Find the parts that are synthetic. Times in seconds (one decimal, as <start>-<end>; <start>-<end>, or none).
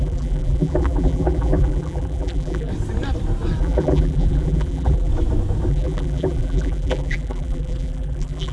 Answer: 0.0-2.7; 3.6-5.1; 5.7-8.5